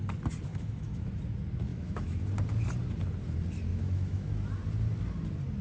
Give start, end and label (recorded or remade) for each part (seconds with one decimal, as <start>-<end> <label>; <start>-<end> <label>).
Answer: 0.0-0.5 recorded; 0.5-1.2 remade; 1.2-1.7 recorded; 1.7-2.2 remade; 2.2-3.7 recorded; 3.7-4.3 remade; 4.3-5.6 recorded